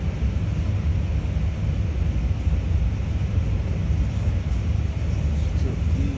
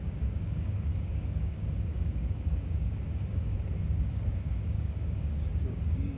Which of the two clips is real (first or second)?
first